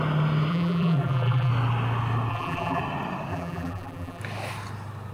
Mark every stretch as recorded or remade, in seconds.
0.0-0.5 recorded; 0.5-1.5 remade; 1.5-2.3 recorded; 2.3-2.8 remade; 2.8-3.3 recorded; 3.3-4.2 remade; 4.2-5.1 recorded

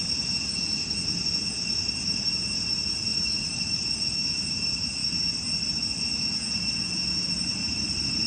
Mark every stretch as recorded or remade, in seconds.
0.0-3.1 recorded; 3.1-4.0 remade; 4.0-7.5 recorded; 7.5-8.3 remade

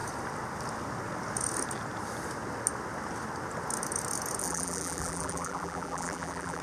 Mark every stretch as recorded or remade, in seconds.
0.0-4.4 recorded; 4.4-6.6 remade

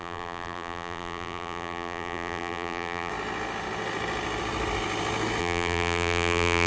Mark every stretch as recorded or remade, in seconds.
0.0-3.1 remade; 3.1-5.4 recorded; 5.4-6.7 remade

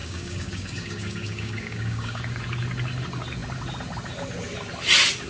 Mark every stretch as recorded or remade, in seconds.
0.0-2.2 remade; 2.2-5.3 recorded